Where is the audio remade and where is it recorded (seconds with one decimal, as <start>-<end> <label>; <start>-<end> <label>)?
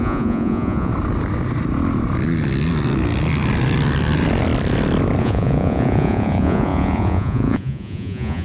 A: 0.0-0.9 remade; 0.9-5.2 recorded; 5.2-8.4 remade